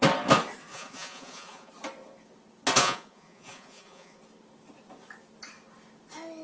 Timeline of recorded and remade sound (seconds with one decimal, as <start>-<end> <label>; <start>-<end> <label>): 0.0-0.7 recorded; 0.7-1.7 remade; 1.7-2.8 recorded; 2.8-4.2 remade; 4.2-6.4 recorded

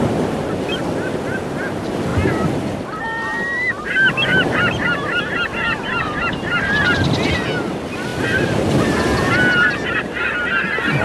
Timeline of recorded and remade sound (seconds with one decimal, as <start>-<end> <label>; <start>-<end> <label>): 0.0-11.0 recorded

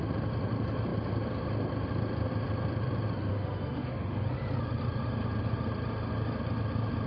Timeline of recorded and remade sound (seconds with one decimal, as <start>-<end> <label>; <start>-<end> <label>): 0.0-3.3 recorded; 3.3-4.2 remade; 4.2-7.1 recorded